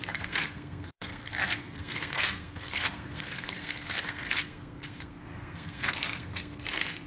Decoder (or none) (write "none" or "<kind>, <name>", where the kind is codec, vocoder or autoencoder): codec, SNAC